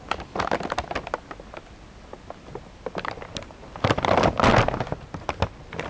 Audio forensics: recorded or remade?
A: recorded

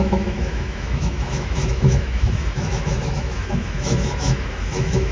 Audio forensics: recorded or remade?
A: remade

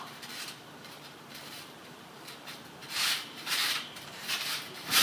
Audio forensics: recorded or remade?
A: remade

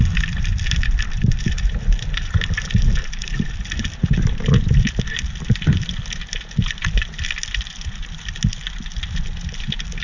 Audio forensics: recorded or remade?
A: recorded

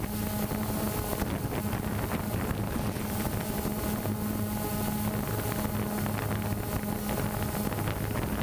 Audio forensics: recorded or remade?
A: recorded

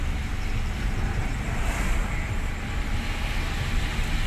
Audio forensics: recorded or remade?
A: recorded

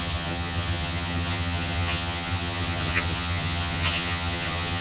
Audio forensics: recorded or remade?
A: remade